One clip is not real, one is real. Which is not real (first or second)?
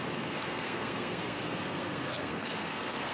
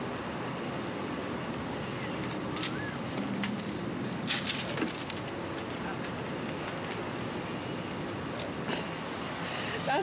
first